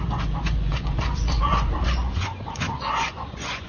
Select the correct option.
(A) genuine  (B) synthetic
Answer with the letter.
B